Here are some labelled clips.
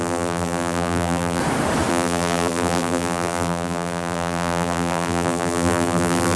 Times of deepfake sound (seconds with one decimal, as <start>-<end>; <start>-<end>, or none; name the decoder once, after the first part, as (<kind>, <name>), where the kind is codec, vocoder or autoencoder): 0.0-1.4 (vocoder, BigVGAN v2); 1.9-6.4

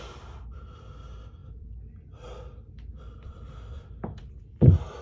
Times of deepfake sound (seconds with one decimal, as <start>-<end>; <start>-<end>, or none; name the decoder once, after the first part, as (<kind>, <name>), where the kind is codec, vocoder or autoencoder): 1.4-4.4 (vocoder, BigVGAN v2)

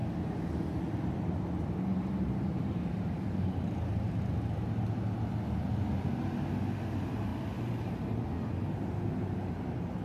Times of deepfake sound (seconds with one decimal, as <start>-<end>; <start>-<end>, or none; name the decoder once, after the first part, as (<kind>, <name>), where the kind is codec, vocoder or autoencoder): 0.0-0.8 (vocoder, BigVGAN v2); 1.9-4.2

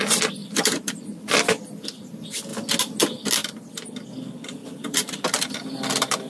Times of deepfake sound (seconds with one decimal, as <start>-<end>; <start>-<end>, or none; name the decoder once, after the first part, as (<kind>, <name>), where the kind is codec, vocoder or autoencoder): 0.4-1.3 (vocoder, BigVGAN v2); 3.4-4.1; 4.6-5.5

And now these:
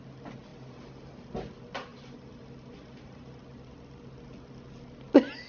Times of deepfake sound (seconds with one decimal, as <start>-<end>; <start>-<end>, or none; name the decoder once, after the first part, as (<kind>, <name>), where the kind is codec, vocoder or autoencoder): 0.5-1.1 (vocoder, BigVGAN v2); 1.9-3.4

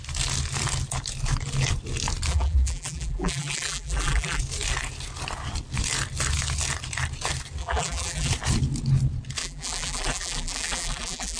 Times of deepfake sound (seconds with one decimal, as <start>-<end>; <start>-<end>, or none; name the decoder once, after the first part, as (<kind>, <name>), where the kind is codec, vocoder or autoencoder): 2.3-4.4 (vocoder, BigVGAN v2); 7.6-8.3; 9.4-11.4